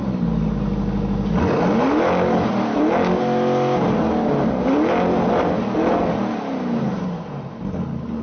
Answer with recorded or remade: recorded